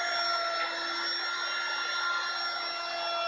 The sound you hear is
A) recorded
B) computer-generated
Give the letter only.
A